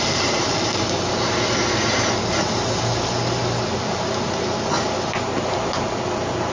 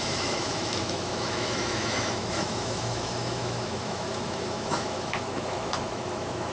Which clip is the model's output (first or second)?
second